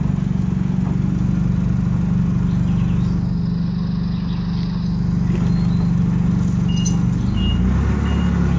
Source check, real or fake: real